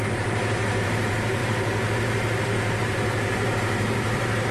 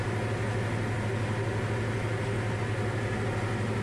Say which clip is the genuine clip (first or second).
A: second